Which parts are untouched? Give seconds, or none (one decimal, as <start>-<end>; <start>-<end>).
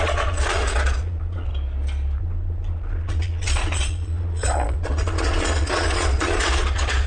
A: 1.5-2.2